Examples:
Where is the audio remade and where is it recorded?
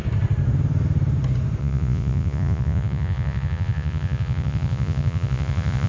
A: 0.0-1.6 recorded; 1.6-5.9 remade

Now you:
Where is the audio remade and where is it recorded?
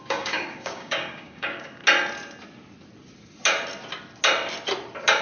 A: 0.0-1.8 remade; 1.8-5.2 recorded